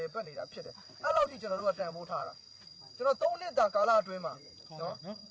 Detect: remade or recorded remade